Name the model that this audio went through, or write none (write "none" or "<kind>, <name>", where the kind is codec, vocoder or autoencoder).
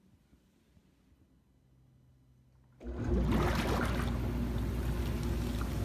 none